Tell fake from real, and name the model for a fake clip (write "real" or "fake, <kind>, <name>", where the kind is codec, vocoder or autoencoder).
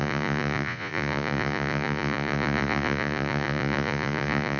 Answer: fake, vocoder, Vocos